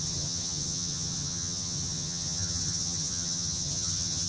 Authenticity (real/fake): fake